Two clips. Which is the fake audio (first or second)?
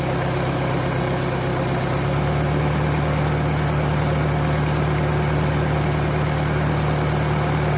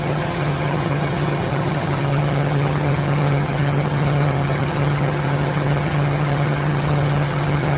second